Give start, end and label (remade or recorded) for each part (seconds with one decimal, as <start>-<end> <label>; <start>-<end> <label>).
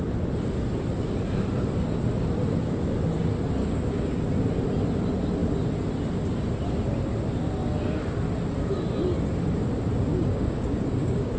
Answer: 0.0-3.6 recorded; 3.6-4.2 remade; 4.2-10.1 recorded; 10.1-11.4 remade